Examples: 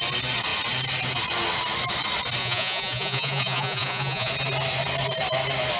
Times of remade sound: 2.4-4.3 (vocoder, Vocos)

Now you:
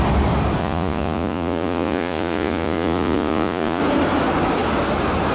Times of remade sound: 0.6-3.8 (vocoder, Vocos)